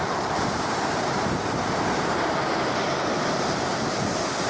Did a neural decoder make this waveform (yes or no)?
yes